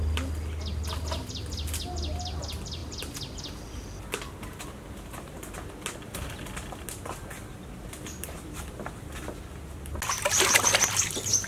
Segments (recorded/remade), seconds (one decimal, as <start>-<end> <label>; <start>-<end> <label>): 0.0-11.5 recorded